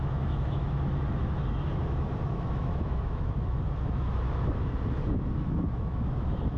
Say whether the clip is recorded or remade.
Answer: remade